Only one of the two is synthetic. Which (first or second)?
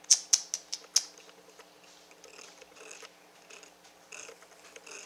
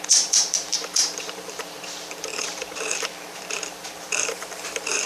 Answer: second